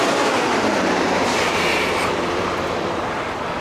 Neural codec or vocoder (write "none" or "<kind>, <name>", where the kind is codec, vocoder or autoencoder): vocoder, BigVGAN v2